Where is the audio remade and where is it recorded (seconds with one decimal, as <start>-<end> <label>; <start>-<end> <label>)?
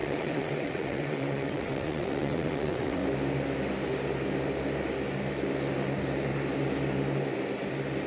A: 0.0-3.0 remade; 3.0-8.1 recorded